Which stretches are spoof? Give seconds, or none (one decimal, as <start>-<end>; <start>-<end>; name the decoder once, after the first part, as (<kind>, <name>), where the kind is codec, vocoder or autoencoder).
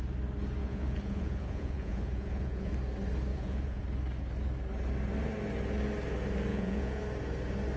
0.6-2.7 (vocoder, Vocos); 3.3-3.8; 6.5-7.0